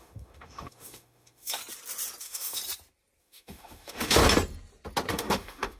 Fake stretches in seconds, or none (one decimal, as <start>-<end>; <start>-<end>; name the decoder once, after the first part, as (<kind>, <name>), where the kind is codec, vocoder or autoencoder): 0.0-1.6 (autoencoder, DAC-VAE); 2.2-2.6; 3.2-4.2; 5.1-5.8

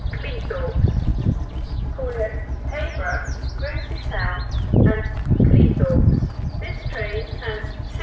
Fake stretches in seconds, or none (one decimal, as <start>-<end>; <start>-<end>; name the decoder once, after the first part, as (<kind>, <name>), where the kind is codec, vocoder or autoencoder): none

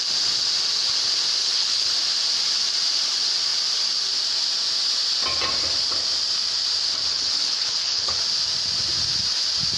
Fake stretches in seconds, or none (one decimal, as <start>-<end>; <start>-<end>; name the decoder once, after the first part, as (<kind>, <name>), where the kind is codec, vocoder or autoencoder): 1.4-1.9 (codec, HILCodec); 7.1-8.2

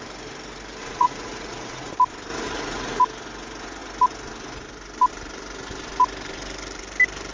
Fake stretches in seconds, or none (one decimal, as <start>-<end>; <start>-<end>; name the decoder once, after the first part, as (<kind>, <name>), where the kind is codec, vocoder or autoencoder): 0.8-1.9 (vocoder, Vocos); 2.3-3.0

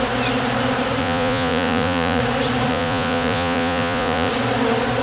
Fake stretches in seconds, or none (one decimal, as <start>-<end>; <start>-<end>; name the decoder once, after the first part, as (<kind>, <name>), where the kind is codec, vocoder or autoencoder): 1.0-2.2 (vocoder, Vocos); 2.7-4.3

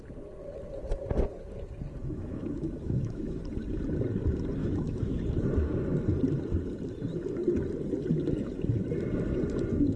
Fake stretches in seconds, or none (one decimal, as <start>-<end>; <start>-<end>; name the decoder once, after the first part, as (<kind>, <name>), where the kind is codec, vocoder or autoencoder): 2.0-3.4 (autoencoder, DAC-VAE); 4.6-5.2